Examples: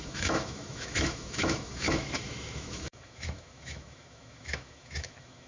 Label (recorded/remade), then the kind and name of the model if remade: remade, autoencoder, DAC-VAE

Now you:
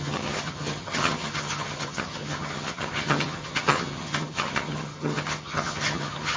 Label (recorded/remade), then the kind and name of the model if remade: remade, vocoder, HiFi-GAN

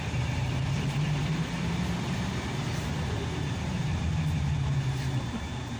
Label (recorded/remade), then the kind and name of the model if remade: remade, vocoder, BigVGAN v2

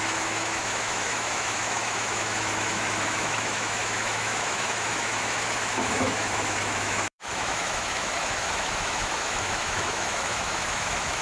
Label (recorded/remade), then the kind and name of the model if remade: remade, autoencoder, DAC-VAE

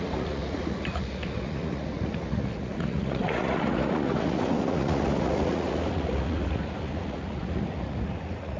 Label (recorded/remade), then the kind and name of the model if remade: remade, vocoder, Vocos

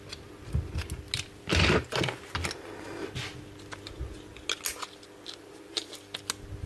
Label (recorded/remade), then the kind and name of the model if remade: recorded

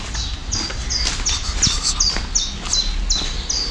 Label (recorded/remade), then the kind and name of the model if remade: recorded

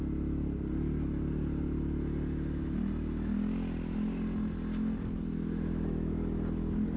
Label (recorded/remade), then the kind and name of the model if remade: recorded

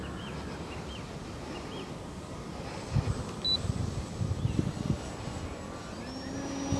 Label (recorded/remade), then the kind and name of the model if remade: recorded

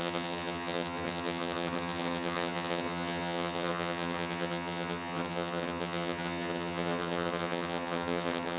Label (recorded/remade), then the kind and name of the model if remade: remade, vocoder, HiFi-GAN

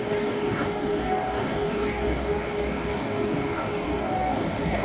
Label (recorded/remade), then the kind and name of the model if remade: remade, codec, DAC